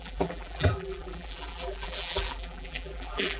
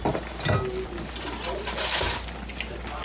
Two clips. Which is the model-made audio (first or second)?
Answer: first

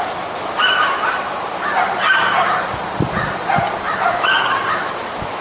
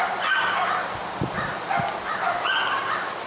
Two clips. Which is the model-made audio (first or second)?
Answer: first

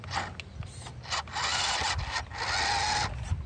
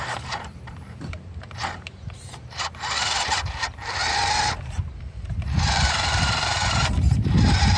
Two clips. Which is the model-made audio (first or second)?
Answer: second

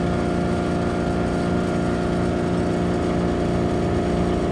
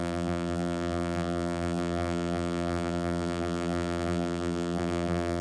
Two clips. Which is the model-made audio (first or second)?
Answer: second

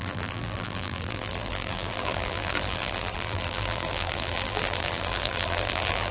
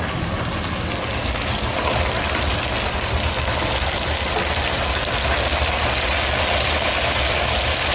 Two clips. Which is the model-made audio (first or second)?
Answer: first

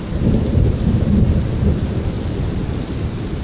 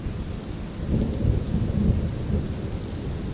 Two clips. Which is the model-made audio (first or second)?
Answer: first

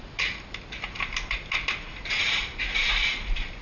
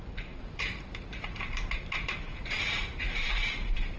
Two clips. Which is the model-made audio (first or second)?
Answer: second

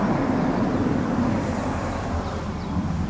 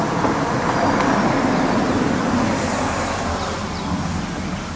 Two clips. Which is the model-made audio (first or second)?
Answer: first